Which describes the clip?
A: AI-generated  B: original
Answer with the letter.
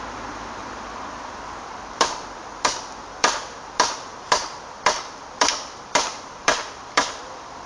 A